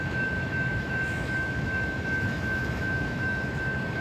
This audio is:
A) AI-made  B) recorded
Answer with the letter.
A